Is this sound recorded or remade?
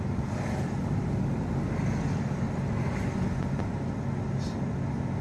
recorded